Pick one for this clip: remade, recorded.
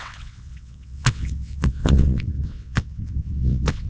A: remade